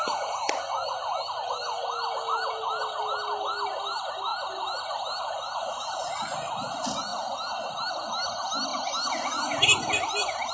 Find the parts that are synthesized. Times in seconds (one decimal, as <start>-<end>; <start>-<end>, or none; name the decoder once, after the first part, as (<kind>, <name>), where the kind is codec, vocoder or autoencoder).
none

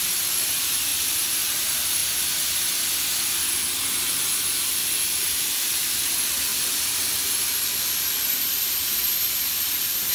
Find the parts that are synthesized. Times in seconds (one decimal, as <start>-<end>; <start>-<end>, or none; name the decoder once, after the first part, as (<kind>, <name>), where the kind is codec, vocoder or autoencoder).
0.0-2.0 (vocoder, BigVGAN v2); 4.7-10.1

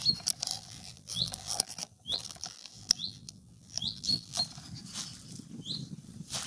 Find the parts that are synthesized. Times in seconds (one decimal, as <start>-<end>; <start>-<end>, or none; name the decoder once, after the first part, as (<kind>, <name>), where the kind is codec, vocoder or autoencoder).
0.5-4.4 (vocoder, BigVGAN v2)

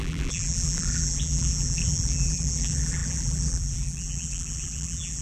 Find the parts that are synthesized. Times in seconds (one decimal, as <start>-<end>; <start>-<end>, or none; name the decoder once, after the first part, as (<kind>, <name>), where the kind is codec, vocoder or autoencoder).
0.0-5.2 (vocoder, BigVGAN v2)

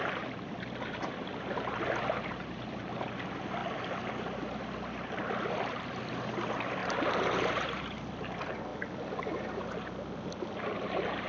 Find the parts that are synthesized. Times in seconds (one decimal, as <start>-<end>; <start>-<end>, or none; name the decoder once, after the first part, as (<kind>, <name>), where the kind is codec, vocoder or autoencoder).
0.0-3.6 (vocoder, BigVGAN v2); 4.6-6.8; 7.5-11.3

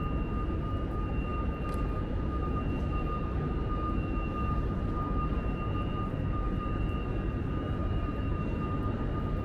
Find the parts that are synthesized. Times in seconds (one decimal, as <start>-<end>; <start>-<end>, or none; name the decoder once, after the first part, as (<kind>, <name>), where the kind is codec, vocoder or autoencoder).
7.8-8.6 (vocoder, BigVGAN v2)

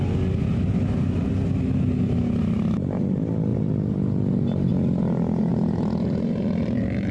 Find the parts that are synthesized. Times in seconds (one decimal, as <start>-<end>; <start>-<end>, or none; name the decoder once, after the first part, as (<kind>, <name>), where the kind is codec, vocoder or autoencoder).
3.5-4.7 (vocoder, BigVGAN v2); 5.5-7.1